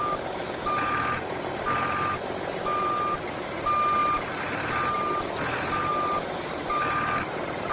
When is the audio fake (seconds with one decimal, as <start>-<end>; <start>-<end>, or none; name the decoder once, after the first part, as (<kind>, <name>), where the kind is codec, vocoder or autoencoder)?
none

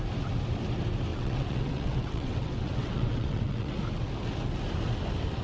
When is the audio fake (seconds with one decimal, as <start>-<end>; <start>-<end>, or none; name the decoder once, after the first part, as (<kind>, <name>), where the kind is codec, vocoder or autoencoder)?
1.1-3.8 (vocoder, WaveNeXt)

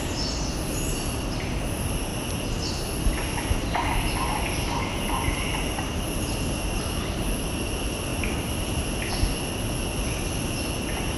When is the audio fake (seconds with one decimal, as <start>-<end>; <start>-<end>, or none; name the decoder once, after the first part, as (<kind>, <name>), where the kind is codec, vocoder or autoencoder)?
none

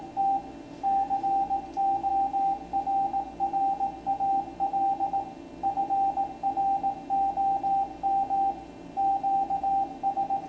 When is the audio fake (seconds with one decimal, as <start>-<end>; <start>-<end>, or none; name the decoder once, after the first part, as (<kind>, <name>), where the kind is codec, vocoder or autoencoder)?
none

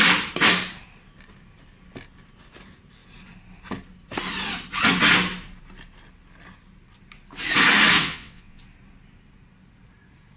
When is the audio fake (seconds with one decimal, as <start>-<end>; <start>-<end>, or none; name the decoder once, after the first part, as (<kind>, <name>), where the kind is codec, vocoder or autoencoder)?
8.0-8.6 (vocoder, WaveNeXt)

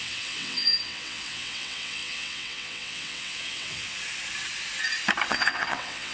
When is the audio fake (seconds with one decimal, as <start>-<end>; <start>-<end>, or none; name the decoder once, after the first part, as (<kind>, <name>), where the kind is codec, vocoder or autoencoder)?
0.0-3.9 (vocoder, WaveNeXt); 5.3-6.1

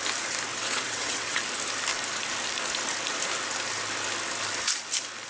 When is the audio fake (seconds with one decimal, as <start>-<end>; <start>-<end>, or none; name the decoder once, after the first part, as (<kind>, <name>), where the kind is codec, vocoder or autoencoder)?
0.5-1.4 (vocoder, WaveNeXt)

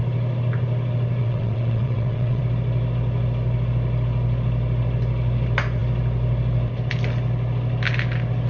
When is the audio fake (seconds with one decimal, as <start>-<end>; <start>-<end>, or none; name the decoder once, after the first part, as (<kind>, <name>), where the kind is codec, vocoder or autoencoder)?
1.2-2.4 (vocoder, WaveNeXt)